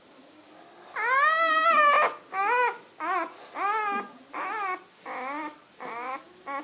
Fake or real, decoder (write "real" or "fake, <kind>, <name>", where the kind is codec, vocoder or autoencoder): real